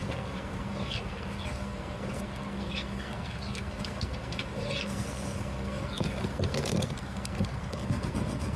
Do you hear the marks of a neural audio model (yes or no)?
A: yes